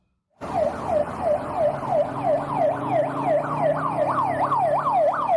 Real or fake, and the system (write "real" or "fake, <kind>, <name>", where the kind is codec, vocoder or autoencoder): real